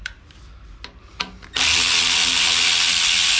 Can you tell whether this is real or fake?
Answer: real